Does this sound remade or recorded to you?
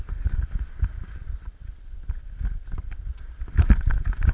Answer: recorded